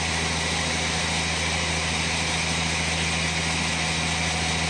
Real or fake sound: real